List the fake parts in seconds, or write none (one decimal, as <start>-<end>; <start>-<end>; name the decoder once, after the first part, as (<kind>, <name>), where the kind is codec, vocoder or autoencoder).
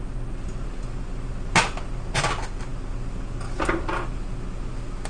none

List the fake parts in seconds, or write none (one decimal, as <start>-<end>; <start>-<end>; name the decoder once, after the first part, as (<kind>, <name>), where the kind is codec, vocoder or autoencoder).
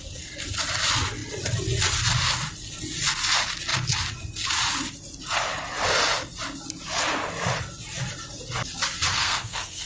9.1-9.9 (codec, SNAC)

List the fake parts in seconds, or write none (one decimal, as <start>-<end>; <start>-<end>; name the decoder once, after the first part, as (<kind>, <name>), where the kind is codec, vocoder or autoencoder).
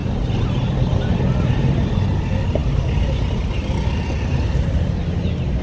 0.0-1.2 (vocoder, BigVGAN v2)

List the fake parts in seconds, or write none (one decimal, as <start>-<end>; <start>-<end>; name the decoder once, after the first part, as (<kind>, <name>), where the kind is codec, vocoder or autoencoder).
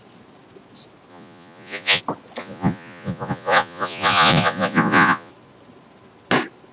1.1-2.0 (vocoder, Vocos); 2.4-5.3